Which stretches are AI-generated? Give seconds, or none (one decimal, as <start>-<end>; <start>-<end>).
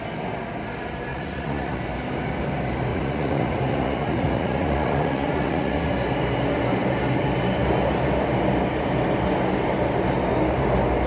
1.1-1.8; 2.9-5.9